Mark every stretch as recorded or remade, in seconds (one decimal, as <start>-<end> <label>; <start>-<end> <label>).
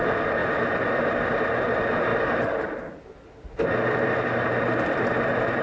0.0-5.6 recorded